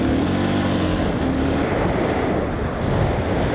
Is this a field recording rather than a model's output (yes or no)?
yes